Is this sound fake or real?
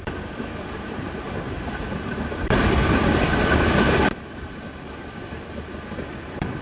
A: fake